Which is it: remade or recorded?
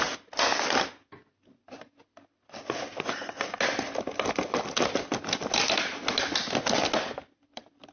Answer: recorded